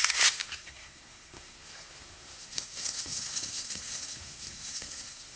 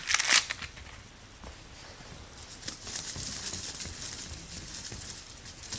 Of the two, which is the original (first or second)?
second